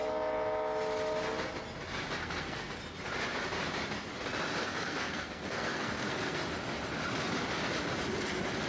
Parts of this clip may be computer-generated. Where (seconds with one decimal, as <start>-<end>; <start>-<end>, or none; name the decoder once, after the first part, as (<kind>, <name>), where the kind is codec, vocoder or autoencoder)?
2.2-2.8 (codec, SNAC); 4.6-6.4